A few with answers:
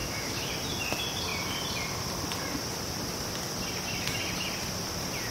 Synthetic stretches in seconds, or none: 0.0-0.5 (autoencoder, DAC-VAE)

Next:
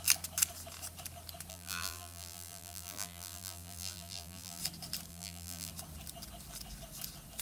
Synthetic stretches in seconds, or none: 1.5-4.6 (vocoder, BigVGAN v2); 5.1-5.7

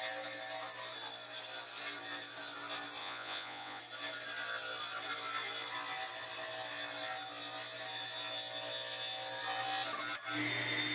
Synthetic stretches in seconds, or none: 3.0-3.8 (vocoder, Vocos)

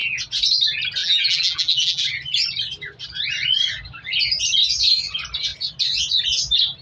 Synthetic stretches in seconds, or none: 1.0-2.0 (vocoder, BigVGAN v2)

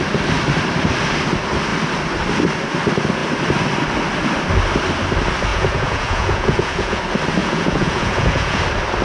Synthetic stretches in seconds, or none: 5.5-7.0 (vocoder, Vocos); 7.4-8.6

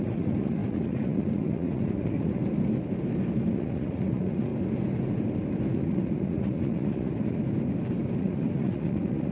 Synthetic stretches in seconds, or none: 0.0-2.4 (vocoder, Vocos); 3.5-4.5; 5.7-7.4; 8.2-9.3

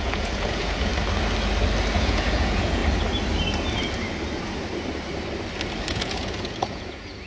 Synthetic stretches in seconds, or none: 0.0-0.9 (vocoder, Vocos); 2.0-2.8; 5.9-7.3